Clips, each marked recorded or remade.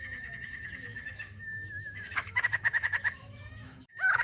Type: remade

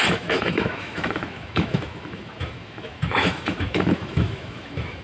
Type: remade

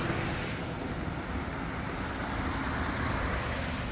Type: recorded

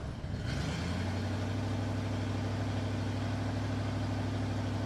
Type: recorded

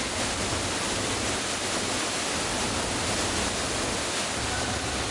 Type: recorded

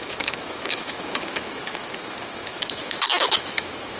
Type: remade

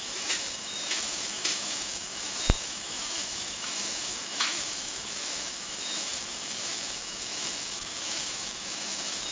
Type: remade